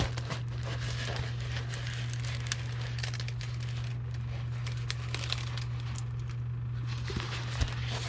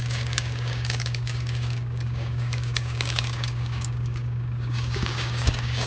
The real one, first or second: first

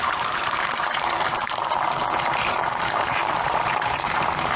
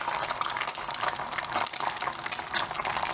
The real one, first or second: second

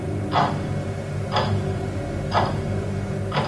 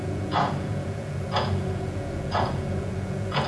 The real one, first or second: first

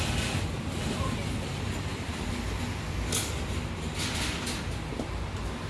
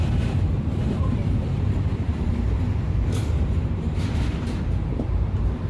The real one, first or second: first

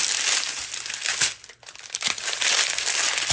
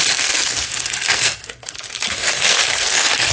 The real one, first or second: first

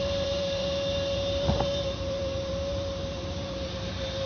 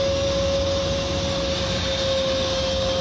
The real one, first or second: second